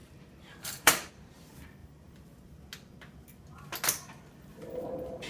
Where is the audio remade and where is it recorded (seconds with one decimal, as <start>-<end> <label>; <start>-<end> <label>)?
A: 0.0-1.1 remade; 1.1-1.8 recorded; 1.8-2.5 remade; 2.5-5.3 recorded